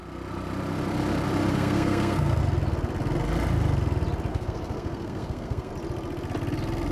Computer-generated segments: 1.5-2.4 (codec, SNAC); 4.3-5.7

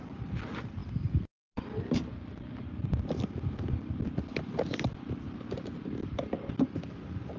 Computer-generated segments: none

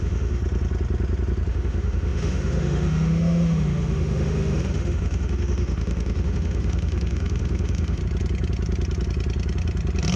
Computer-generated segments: 0.0-0.4 (autoencoder, DAC-VAE); 1.5-8.0

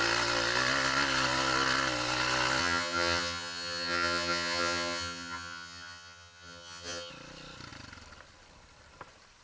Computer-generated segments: 2.6-7.1 (vocoder, HiFi-GAN)

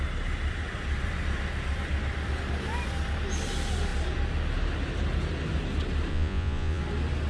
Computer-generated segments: 6.1-6.8 (vocoder, Vocos)

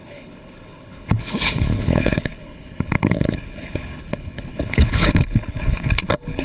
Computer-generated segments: 0.0-6.4 (codec, HILCodec)

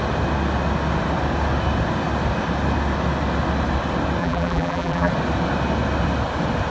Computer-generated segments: 4.2-5.1 (vocoder, BigVGAN v2)

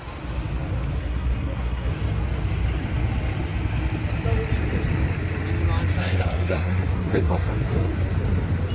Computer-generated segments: 1.0-1.9 (codec, SNAC); 6.0-7.9